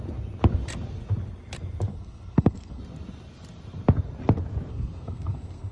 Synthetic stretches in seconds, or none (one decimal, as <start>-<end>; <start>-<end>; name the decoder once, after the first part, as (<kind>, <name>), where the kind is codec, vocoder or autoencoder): 1.9-2.8 (codec, SNAC); 4.7-5.7